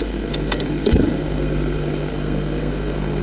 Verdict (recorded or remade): remade